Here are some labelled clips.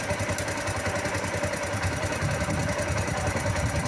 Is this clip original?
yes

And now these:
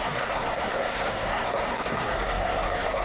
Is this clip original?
no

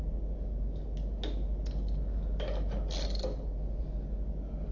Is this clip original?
yes